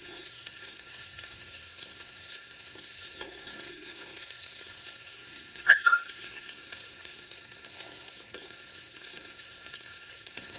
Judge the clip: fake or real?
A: fake